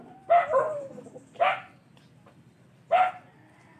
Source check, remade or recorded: recorded